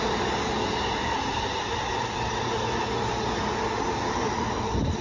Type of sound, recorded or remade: recorded